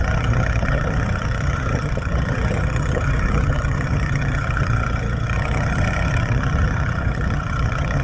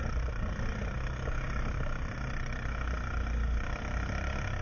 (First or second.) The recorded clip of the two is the second